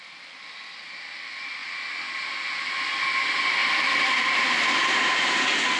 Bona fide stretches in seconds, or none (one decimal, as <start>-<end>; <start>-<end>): 1.6-2.6